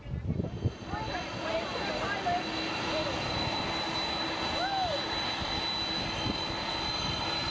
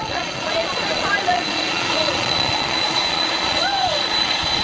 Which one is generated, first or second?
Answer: second